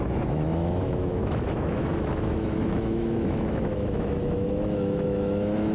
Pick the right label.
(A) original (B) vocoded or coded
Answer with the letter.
B